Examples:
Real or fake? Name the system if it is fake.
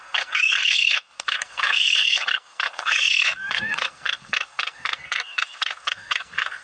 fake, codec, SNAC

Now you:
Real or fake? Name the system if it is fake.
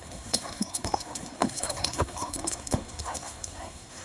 fake, codec, SNAC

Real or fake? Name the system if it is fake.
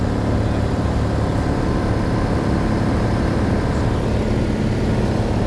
real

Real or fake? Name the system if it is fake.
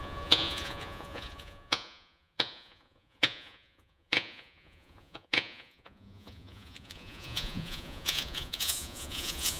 fake, vocoder, Vocos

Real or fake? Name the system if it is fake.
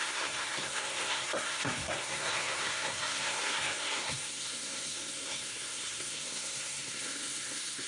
fake, codec, SNAC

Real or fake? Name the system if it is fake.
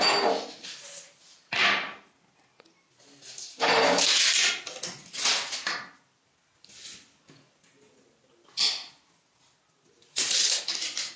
real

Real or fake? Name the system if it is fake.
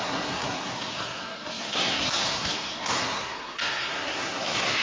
fake, codec, SNAC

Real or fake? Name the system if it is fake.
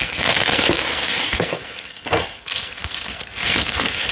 fake, codec, SNAC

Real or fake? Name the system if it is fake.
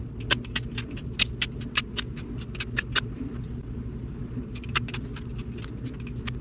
real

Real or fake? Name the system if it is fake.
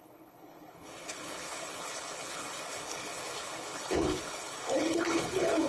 fake, codec, HILCodec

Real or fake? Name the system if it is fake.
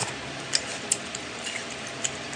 real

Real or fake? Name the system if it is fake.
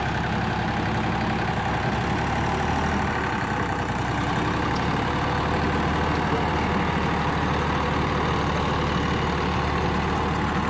real